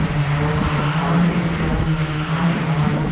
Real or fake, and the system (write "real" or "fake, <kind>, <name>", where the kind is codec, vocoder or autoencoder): fake, vocoder, BigVGAN v2